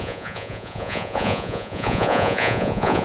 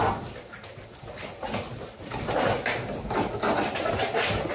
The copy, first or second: first